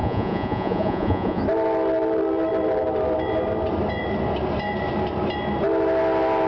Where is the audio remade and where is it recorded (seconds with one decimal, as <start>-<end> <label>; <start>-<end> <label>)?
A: 0.0-1.4 remade; 1.4-6.5 recorded